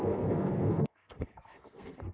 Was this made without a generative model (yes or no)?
no